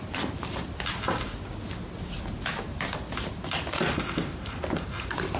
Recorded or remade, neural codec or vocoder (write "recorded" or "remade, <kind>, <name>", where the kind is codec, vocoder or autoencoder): recorded